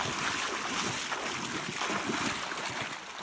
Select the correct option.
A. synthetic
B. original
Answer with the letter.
B